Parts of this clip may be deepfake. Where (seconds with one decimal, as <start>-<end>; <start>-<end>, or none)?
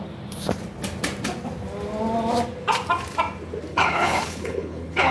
3.7-5.1